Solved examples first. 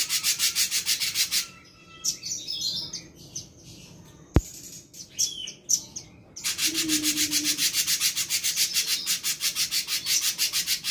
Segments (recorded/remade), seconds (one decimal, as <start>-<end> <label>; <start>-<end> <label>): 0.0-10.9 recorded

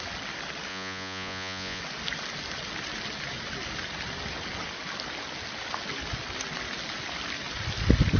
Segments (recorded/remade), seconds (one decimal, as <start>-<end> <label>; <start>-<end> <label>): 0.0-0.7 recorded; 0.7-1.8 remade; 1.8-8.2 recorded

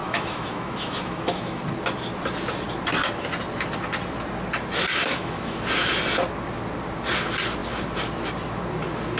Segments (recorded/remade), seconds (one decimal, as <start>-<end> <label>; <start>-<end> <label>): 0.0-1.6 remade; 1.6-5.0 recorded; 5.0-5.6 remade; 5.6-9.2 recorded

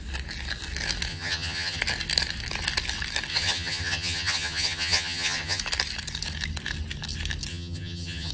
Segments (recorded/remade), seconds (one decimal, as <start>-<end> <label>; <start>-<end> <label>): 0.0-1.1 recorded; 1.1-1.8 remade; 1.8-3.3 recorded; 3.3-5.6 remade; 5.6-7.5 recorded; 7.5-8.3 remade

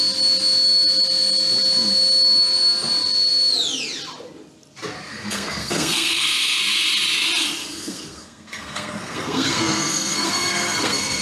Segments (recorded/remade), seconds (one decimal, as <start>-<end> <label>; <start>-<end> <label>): 0.0-5.1 recorded; 5.1-6.6 remade; 6.6-7.6 recorded; 7.6-11.2 remade

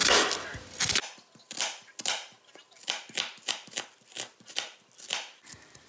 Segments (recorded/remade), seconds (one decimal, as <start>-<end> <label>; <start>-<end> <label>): 0.0-5.9 recorded

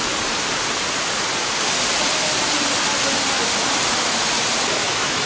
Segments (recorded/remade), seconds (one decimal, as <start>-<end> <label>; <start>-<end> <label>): 0.0-4.8 recorded; 4.8-5.3 remade

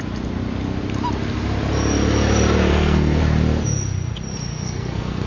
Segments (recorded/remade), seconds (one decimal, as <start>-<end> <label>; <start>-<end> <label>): 0.0-2.7 recorded; 2.7-3.2 remade; 3.2-4.5 recorded; 4.5-5.3 remade